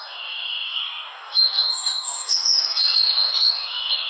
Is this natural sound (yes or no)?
no